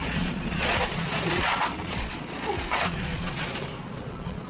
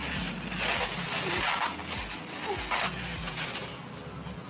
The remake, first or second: first